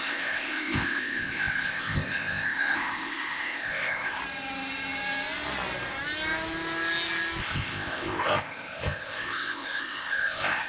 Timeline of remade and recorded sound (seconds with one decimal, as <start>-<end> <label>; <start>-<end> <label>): 0.0-4.2 remade; 4.2-7.4 recorded; 7.4-10.7 remade